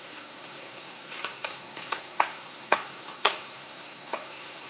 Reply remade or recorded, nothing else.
remade